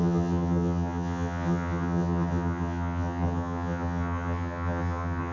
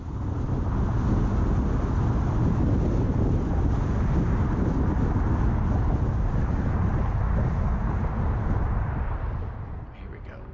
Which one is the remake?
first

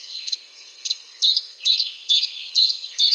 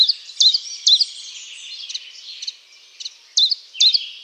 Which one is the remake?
first